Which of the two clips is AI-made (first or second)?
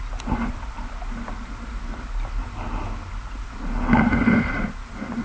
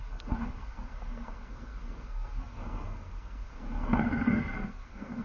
second